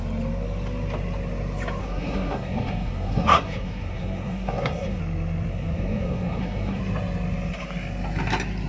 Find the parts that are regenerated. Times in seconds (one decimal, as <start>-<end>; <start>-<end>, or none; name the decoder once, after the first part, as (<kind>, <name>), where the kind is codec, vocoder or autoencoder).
1.8-5.0 (codec, SNAC); 5.5-6.8